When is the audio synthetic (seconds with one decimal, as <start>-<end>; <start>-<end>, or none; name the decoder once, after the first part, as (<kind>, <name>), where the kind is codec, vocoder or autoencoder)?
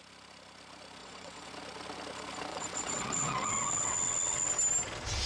1.0-1.5 (vocoder, WaveNeXt); 2.5-4.5